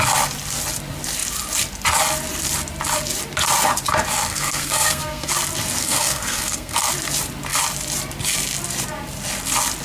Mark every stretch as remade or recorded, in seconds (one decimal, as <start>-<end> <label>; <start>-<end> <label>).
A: 0.0-4.3 recorded; 4.3-5.3 remade; 5.3-5.8 recorded; 5.8-6.9 remade; 6.9-9.8 recorded